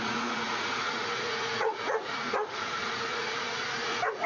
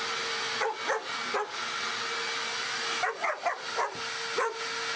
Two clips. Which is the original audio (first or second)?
second